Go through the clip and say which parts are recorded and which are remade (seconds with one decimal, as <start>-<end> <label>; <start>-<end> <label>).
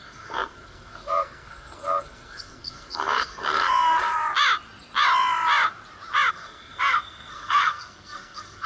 0.0-4.2 remade; 4.2-6.3 recorded; 6.3-8.7 remade